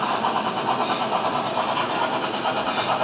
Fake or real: real